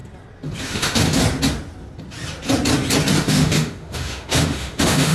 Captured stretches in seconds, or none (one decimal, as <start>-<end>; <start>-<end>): 0.0-0.6; 1.2-3.2